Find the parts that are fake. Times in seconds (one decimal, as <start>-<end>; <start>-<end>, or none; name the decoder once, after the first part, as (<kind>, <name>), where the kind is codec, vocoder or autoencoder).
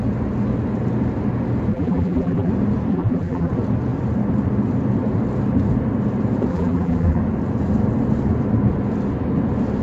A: 1.7-2.5 (vocoder, BigVGAN v2); 2.9-3.5; 6.5-7.2